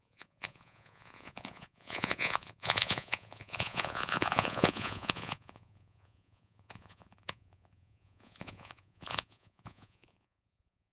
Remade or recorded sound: remade